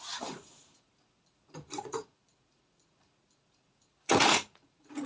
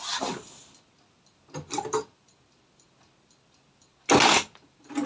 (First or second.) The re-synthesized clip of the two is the first